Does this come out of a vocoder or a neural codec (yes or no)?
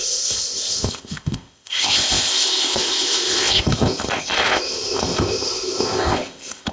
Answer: yes